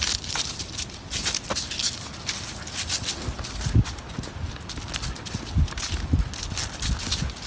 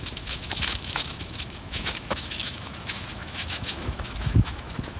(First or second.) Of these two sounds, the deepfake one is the second